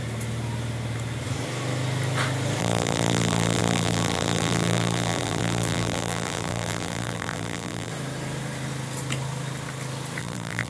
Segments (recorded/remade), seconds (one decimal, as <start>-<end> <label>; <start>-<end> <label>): 0.0-2.6 recorded; 2.6-7.9 remade; 7.9-10.2 recorded; 10.2-10.7 remade